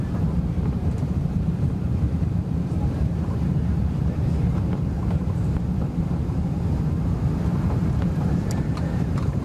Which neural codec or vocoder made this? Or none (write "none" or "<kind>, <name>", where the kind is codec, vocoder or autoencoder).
vocoder, BigVGAN v2